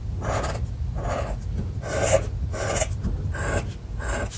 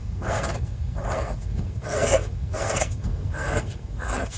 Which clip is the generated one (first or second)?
second